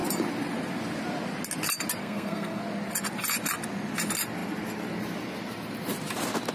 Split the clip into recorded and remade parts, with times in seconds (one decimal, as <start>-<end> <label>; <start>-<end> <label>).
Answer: 0.0-2.0 recorded; 2.0-2.6 remade; 2.6-6.5 recorded